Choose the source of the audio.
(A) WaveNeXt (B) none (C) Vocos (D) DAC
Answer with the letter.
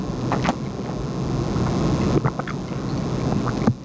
B